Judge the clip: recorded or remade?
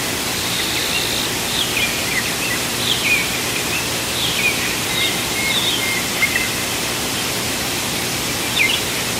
recorded